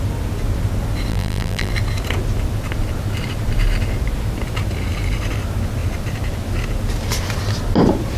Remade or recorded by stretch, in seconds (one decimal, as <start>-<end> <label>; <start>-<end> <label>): 0.0-1.1 recorded; 1.1-1.7 remade; 1.7-8.2 recorded